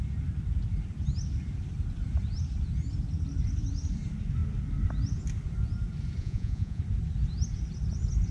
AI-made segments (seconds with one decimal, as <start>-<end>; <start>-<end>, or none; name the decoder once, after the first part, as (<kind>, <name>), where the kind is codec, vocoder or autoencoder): 6.2-6.8 (vocoder, Vocos)